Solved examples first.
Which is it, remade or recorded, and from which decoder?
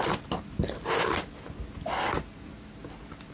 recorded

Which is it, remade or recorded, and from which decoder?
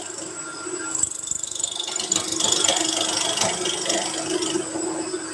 recorded